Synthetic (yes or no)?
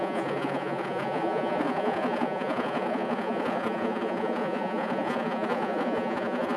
yes